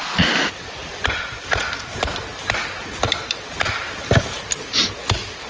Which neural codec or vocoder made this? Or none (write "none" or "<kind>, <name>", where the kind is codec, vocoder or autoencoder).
none